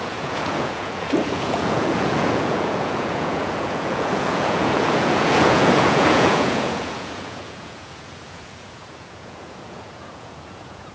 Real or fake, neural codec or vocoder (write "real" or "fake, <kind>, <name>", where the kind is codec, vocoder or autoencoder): fake, vocoder, Vocos